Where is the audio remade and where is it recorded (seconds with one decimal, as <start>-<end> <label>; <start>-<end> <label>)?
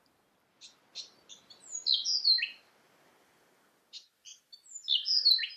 0.0-5.6 recorded